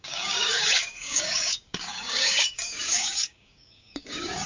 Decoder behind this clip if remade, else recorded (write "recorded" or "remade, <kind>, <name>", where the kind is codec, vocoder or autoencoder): remade, codec, DAC